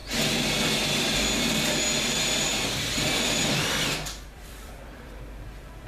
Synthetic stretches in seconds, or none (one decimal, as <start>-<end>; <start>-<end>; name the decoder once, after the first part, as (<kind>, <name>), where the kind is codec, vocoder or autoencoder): 2.0-5.9 (vocoder, BigVGAN v2)